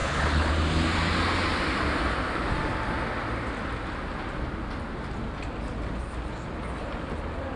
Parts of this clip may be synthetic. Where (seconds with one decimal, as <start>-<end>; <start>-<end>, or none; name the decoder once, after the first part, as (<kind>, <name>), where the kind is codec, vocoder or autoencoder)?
0.0-0.5 (codec, HILCodec)